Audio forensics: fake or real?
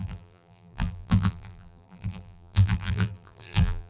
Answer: fake